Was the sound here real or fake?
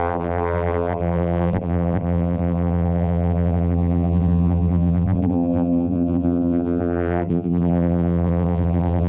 fake